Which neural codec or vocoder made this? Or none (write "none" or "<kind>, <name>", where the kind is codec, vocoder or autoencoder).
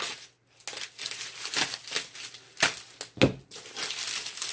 none